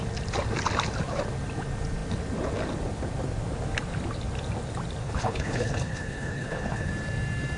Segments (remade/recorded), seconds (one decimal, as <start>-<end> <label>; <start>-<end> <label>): 0.0-5.0 recorded; 5.0-6.9 remade; 6.9-7.6 recorded